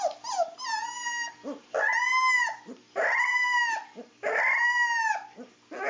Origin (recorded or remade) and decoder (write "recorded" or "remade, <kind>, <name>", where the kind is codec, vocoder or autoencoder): recorded